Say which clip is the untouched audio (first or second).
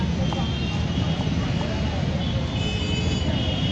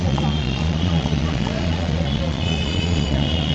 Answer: first